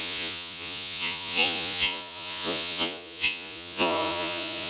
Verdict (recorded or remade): remade